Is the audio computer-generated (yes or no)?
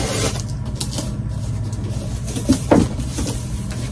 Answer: no